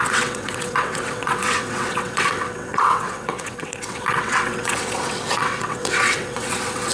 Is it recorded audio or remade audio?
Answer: remade